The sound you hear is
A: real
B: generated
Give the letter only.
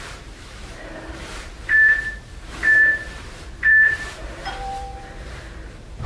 B